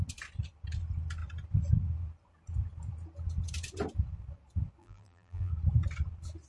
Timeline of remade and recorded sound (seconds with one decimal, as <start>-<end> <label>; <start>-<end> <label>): 0.0-4.8 recorded; 4.8-5.5 remade; 5.5-6.5 recorded